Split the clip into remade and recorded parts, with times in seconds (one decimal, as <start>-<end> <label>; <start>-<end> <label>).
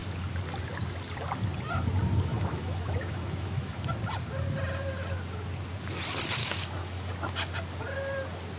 0.0-2.3 recorded; 2.3-3.8 remade; 3.8-6.4 recorded; 6.4-7.1 remade; 7.1-8.6 recorded